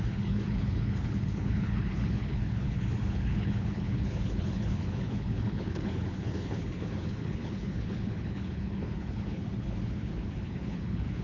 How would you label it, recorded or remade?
remade